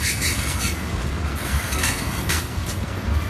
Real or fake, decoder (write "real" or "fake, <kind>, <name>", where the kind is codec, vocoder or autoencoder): fake, codec, SNAC